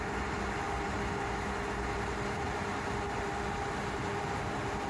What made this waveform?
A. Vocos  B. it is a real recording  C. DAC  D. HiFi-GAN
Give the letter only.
B